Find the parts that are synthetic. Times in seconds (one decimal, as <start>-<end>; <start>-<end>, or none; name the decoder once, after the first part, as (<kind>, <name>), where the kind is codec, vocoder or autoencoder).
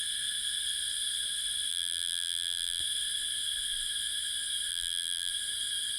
1.7-2.8 (vocoder, BigVGAN v2); 4.7-5.3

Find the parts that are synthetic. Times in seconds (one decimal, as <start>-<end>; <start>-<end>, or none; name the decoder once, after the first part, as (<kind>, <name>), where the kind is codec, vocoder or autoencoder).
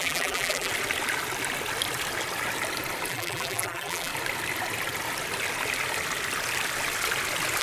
0.0-0.7 (vocoder, BigVGAN v2); 3.1-4.1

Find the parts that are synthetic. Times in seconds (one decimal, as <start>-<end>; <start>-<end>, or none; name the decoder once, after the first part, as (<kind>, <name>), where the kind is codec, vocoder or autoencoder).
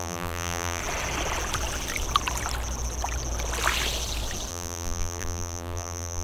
0.0-0.8 (vocoder, BigVGAN v2); 4.5-6.2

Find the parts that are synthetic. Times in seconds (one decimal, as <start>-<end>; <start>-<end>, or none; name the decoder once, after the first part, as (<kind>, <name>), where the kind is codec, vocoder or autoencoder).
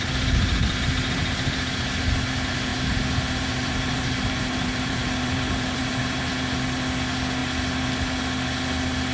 2.7-6.2 (vocoder, BigVGAN v2)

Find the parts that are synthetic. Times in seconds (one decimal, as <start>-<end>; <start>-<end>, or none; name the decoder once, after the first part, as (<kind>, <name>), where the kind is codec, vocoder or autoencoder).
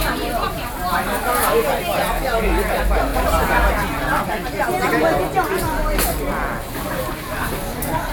3.1-3.7 (vocoder, BigVGAN v2); 5.8-6.3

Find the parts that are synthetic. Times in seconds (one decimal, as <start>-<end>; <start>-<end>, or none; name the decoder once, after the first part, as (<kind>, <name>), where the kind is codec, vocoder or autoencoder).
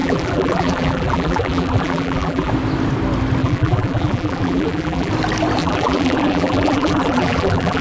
0.0-2.5 (vocoder, BigVGAN v2); 3.4-5.1; 5.6-7.8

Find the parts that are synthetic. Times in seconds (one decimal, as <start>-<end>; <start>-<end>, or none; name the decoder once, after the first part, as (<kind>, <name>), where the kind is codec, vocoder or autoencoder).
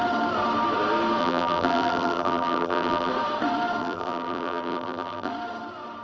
1.2-3.1 (vocoder, BigVGAN v2); 3.8-5.3